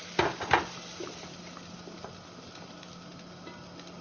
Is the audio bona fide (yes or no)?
yes